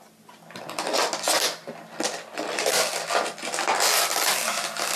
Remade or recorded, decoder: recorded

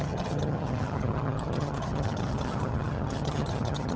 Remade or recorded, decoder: remade, vocoder, HiFi-GAN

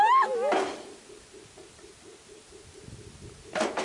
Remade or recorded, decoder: recorded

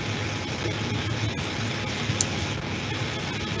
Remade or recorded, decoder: recorded